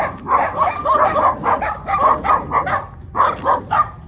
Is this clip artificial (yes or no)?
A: no